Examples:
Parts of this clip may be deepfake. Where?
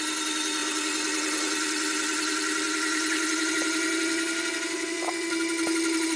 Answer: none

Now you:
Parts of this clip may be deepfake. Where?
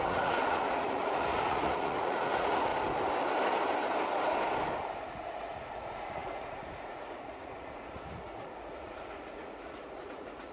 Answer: 0.0-2.7 (vocoder, Vocos); 5.0-10.5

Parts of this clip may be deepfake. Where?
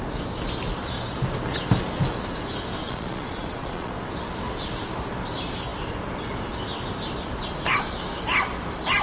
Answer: 2.8-3.9 (vocoder, Vocos)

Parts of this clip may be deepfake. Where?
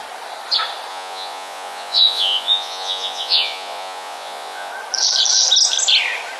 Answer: 0.9-4.7 (vocoder, Vocos)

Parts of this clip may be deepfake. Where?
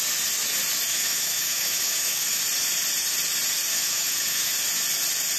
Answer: 0.9-2.4 (autoencoder, DAC-VAE); 3.7-4.5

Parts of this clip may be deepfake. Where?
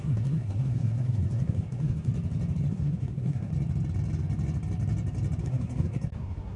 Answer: 0.0-2.1 (codec, SNAC); 2.7-3.5; 5.4-6.6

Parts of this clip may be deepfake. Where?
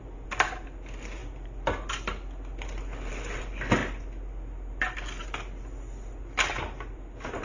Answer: none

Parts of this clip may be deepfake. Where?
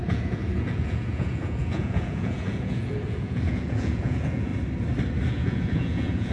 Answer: 0.0-4.5 (vocoder, Vocos); 5.3-6.3